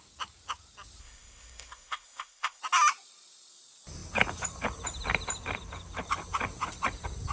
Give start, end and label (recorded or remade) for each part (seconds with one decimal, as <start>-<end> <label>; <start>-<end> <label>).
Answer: 0.0-1.0 recorded; 1.0-2.6 remade; 2.6-7.3 recorded